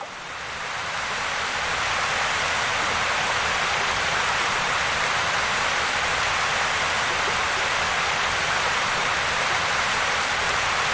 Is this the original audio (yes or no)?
yes